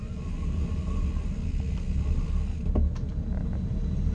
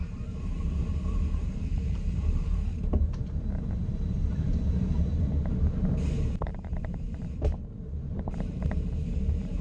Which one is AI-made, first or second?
second